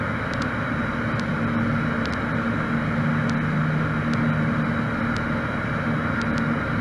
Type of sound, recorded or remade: recorded